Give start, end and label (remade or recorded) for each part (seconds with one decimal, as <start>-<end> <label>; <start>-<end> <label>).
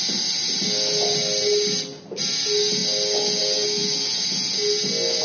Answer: 0.0-5.2 recorded